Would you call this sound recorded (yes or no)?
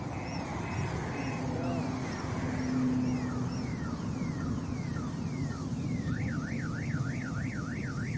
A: yes